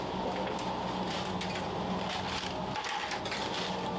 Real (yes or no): yes